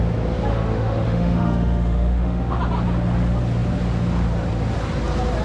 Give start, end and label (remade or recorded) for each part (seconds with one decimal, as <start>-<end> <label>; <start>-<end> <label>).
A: 0.0-0.5 recorded; 0.5-2.6 remade; 2.6-5.4 recorded